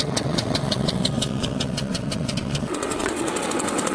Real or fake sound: fake